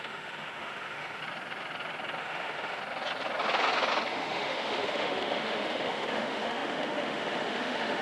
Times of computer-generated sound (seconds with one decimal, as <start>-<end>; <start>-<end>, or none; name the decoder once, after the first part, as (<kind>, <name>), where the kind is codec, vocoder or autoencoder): 0.0-1.2 (autoencoder, DAC-VAE); 2.2-2.8; 4.1-8.0

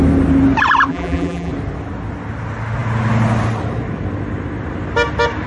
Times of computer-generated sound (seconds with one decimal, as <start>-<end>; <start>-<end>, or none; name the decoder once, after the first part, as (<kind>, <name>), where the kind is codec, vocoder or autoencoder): 0.9-1.5 (vocoder, BigVGAN v2)

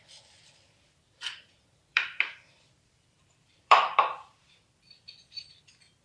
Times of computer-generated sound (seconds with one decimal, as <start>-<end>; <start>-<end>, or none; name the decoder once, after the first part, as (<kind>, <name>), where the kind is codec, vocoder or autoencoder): 1.9-5.5 (vocoder, BigVGAN v2)

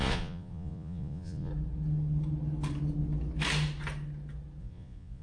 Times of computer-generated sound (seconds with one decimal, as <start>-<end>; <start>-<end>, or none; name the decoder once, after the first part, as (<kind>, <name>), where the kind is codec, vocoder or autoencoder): 0.0-1.5 (vocoder, Vocos); 4.6-5.2

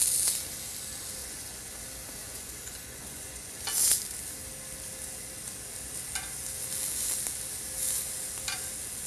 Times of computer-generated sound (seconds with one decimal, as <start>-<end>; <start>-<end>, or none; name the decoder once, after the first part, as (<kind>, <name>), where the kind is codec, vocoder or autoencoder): 1.2-1.7 (vocoder, Vocos); 2.2-3.6